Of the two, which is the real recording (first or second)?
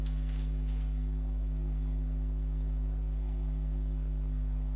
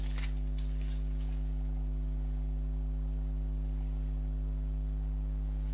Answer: second